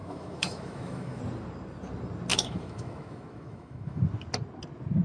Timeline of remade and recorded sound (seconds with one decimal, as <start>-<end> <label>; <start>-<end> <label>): 0.0-1.2 remade; 1.2-2.3 recorded; 2.3-4.0 remade; 4.0-5.0 recorded